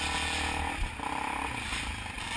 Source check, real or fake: real